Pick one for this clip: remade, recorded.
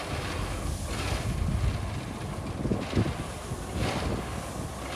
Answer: recorded